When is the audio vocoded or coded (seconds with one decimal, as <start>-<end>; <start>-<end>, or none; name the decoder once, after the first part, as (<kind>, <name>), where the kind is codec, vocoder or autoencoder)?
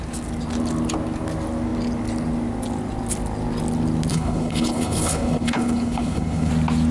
4.1-6.5 (codec, HILCodec)